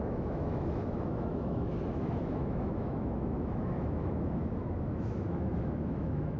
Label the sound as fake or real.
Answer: fake